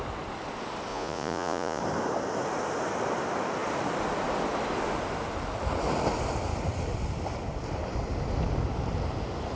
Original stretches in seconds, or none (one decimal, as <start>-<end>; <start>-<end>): 0.0-0.9; 1.8-9.6